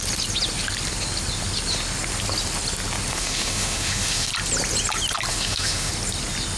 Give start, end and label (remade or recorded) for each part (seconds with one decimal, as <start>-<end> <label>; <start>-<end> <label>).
0.0-3.1 recorded; 3.1-4.3 remade; 4.3-5.3 recorded; 5.3-5.9 remade; 5.9-6.6 recorded